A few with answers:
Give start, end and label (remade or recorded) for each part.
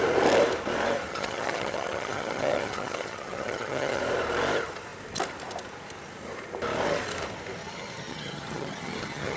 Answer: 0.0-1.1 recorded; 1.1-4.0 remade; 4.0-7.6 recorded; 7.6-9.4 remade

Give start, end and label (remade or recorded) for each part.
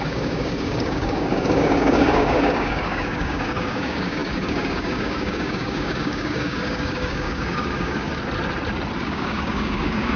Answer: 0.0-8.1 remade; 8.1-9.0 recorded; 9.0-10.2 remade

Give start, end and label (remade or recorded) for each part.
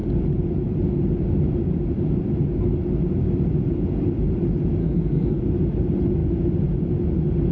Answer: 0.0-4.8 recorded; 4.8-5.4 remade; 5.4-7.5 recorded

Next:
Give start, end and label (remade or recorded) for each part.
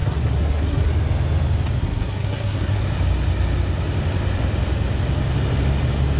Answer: 0.0-0.9 remade; 0.9-1.8 recorded; 1.8-2.8 remade; 2.8-6.2 recorded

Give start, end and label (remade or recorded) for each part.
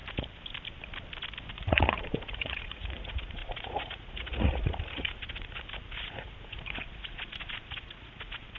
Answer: 0.0-1.5 recorded; 1.5-8.6 remade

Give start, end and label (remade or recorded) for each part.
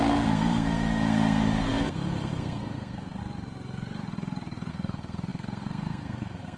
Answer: 0.0-3.2 remade; 3.2-4.7 recorded; 4.7-6.6 remade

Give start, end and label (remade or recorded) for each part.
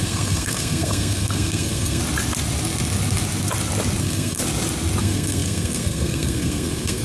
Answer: 0.0-2.0 remade; 2.0-4.0 recorded; 4.0-4.4 remade; 4.4-5.0 recorded; 5.0-7.0 remade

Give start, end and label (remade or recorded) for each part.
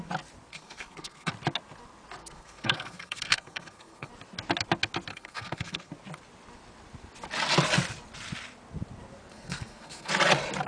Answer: 0.0-0.5 recorded; 0.5-1.3 remade; 1.3-2.2 recorded; 2.2-4.1 remade; 4.1-5.1 recorded; 5.1-5.9 remade; 5.9-9.3 recorded; 9.3-10.1 remade; 10.1-10.7 recorded